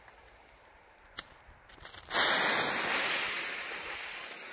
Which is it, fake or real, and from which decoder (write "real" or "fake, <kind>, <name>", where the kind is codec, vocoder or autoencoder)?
real